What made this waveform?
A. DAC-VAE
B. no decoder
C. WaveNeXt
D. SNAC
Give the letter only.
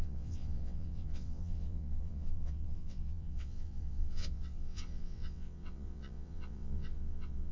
C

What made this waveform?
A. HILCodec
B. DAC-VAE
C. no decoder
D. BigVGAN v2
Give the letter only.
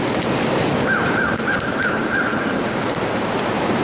D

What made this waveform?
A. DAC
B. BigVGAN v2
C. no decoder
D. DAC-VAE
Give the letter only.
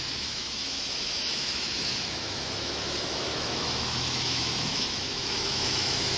D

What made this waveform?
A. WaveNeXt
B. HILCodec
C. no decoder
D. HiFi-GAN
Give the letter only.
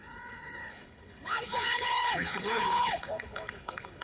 B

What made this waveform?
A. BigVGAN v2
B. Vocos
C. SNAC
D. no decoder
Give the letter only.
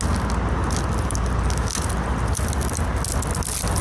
D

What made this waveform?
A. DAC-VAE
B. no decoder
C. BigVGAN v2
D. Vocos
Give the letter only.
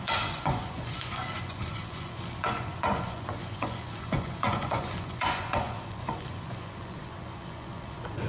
D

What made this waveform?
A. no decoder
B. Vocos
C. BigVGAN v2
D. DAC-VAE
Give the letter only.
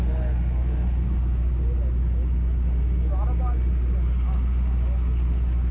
A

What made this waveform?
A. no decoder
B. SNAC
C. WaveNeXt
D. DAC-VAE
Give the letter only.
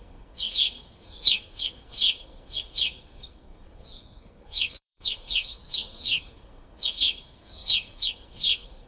B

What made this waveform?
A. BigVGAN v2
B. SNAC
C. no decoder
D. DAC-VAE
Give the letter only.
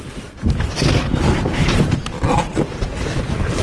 C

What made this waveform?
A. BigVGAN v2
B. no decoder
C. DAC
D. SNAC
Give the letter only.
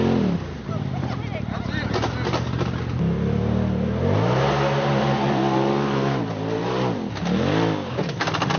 B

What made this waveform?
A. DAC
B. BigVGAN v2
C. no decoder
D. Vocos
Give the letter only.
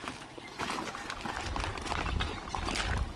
C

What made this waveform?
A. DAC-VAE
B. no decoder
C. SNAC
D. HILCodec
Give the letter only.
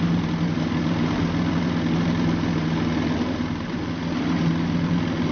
B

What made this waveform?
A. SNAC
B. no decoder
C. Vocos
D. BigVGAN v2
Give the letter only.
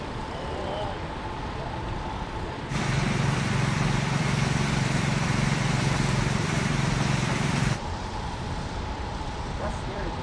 D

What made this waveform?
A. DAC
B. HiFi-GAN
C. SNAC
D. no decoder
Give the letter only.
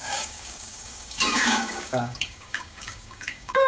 A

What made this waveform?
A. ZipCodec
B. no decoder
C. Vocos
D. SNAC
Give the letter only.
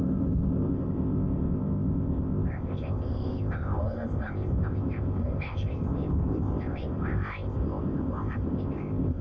A